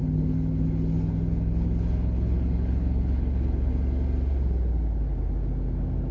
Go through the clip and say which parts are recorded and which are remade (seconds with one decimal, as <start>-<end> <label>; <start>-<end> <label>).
0.0-3.7 remade; 3.7-6.1 recorded